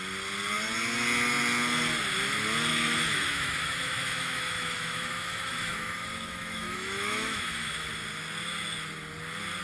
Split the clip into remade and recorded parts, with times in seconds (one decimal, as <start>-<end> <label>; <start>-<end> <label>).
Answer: 0.0-2.7 recorded; 2.7-7.9 remade; 7.9-9.6 recorded